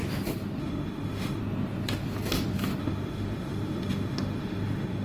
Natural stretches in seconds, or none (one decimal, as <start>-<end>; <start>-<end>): 0.0-0.6; 1.4-2.8